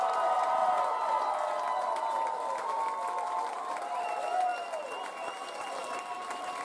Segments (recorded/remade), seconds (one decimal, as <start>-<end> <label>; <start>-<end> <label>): 0.0-0.6 remade; 0.6-3.5 recorded; 3.5-4.5 remade; 4.5-5.6 recorded; 5.6-6.6 remade